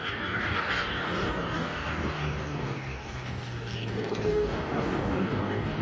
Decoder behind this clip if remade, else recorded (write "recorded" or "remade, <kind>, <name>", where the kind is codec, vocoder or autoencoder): remade, codec, DAC